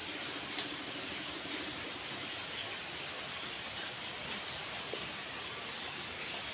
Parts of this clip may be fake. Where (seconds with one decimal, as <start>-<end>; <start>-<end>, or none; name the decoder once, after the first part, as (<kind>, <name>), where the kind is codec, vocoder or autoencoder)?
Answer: none

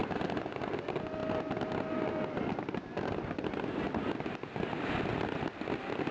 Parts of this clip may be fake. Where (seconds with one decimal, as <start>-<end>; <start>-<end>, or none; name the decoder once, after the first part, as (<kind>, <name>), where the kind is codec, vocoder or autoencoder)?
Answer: none

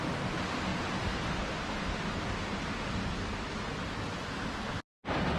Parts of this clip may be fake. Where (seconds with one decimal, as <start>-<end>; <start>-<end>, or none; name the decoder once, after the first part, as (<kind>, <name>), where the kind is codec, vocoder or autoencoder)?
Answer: none

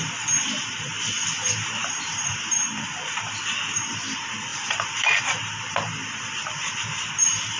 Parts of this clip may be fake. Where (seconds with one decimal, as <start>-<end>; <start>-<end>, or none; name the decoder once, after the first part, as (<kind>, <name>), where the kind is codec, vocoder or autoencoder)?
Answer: 0.0-7.6 (vocoder, BigVGAN v2)

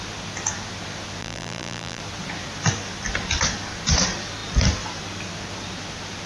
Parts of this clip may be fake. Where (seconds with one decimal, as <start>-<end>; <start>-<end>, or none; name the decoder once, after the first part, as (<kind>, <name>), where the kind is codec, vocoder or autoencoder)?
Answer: 1.2-2.0 (vocoder, BigVGAN v2)

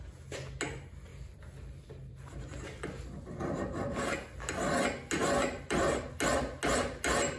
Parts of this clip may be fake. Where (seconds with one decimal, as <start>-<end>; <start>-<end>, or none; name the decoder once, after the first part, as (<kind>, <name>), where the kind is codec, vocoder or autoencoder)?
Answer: 1.1-4.0 (vocoder, BigVGAN v2); 5.2-5.9

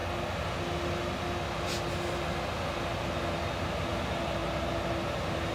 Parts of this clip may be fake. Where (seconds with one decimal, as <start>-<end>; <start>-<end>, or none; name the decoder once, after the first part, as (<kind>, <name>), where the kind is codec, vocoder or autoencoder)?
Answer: 4.4-5.5 (vocoder, BigVGAN v2)